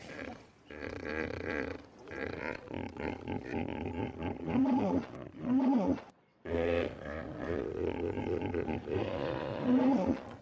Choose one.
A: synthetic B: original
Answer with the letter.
A